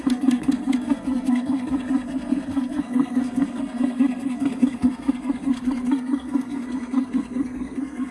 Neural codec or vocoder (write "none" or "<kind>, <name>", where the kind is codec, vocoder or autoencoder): codec, SNAC